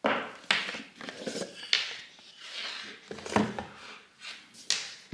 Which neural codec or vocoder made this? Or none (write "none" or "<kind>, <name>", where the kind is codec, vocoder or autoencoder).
none